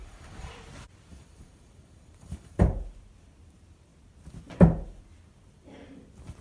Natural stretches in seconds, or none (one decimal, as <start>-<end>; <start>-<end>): 0.5-1.1; 2.6-6.4